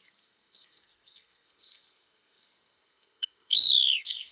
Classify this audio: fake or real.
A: fake